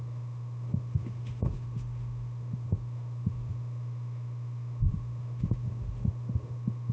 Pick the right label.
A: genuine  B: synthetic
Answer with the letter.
B